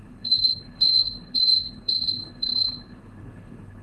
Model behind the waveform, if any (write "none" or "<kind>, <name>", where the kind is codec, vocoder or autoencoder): codec, HILCodec